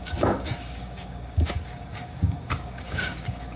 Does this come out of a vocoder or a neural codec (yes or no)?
yes